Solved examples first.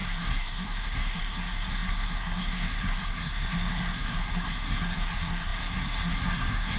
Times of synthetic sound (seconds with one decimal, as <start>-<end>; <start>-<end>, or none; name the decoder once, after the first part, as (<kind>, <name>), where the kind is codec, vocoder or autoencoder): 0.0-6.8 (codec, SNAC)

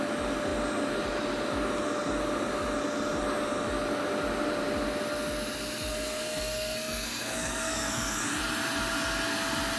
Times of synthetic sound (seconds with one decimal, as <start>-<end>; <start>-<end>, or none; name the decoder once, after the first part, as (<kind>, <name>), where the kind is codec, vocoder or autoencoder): 5.9-8.2 (codec, SNAC)

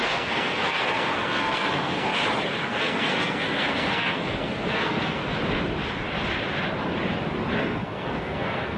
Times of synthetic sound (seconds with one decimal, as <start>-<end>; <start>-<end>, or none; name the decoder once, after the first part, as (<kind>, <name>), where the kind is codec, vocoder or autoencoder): 0.0-2.1 (codec, SNAC); 2.7-5.2; 7.6-8.8